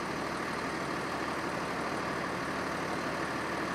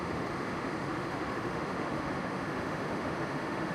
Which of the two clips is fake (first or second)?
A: second